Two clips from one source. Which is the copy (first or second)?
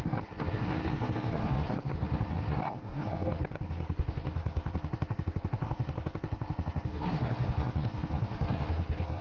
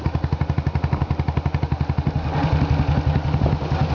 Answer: first